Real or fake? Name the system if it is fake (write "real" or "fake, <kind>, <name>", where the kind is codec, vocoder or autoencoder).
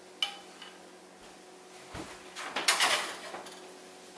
real